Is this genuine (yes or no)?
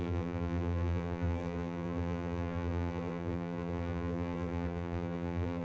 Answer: no